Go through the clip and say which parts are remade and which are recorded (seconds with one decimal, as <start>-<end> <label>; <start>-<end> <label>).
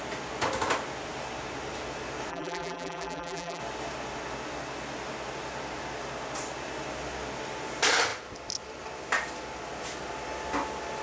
0.0-2.3 recorded; 2.3-3.6 remade; 3.6-11.0 recorded